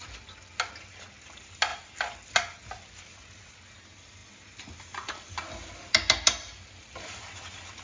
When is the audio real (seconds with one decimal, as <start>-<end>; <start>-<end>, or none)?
0.0-7.8